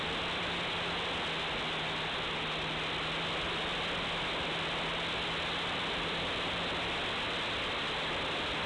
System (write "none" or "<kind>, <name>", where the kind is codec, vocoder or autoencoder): none